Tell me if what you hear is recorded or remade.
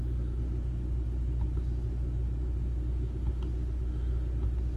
recorded